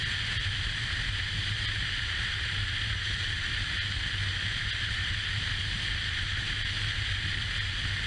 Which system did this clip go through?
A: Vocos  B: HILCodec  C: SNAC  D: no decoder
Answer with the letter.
D